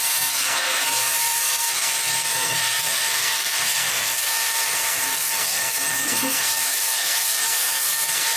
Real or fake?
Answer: fake